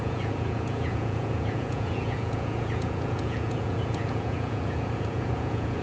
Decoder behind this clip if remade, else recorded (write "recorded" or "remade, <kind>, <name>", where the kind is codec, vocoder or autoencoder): remade, vocoder, Vocos